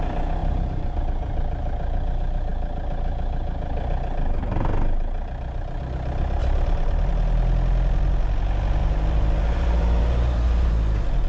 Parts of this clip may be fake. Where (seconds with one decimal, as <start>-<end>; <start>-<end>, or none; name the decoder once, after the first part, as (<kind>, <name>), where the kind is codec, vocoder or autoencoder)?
0.4-1.0 (vocoder, BigVGAN v2); 6.4-7.1; 8.8-10.7